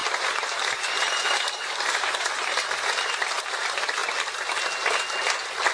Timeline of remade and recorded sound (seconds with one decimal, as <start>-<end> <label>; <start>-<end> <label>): 0.0-3.4 remade; 3.4-5.7 recorded